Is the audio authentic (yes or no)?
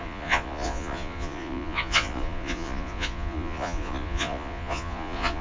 no